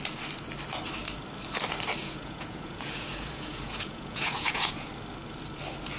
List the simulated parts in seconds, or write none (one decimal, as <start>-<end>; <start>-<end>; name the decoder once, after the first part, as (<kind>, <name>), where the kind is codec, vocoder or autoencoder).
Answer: 2.0-4.9 (vocoder, Vocos)